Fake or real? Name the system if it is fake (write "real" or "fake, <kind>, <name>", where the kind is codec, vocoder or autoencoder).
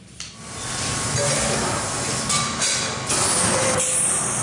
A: real